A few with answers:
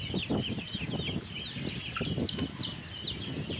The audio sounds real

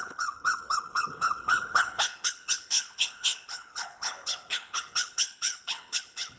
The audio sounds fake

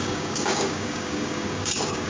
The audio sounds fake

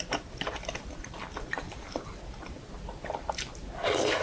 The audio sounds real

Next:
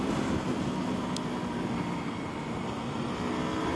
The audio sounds real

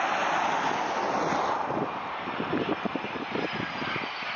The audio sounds real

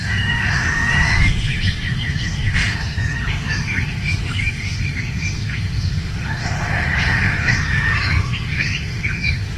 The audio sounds fake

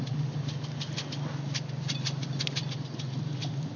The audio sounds real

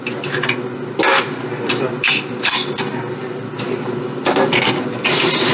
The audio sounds real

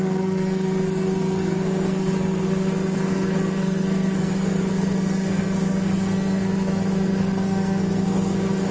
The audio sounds fake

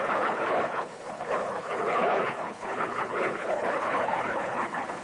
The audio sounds fake